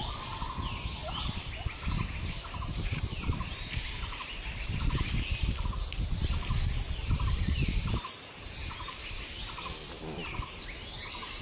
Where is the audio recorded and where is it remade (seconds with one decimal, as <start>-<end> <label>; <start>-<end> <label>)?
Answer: 0.0-11.4 recorded